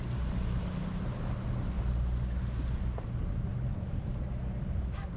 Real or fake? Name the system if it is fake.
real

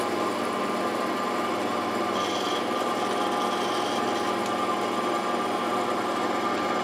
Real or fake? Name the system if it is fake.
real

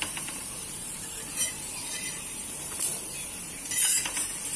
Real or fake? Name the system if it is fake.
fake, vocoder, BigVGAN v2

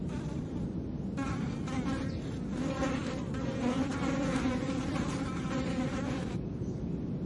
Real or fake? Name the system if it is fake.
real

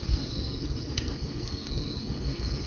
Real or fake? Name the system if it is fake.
fake, codec, SNAC